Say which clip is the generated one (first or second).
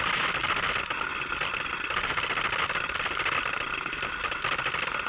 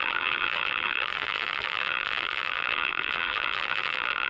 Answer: second